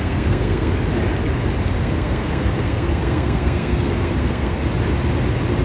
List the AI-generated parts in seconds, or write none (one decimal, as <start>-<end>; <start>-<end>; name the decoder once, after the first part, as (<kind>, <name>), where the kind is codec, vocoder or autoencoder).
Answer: 0.0-0.7 (codec, SNAC); 1.8-4.6